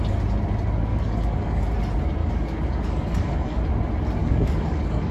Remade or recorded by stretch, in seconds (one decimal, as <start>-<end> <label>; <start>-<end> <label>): 0.0-0.9 recorded; 0.9-1.6 remade; 1.6-2.2 recorded; 2.2-3.6 remade; 3.6-4.2 recorded; 4.2-5.1 remade